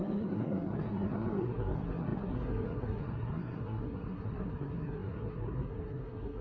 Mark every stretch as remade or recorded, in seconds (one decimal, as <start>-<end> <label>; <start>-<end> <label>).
0.0-6.4 remade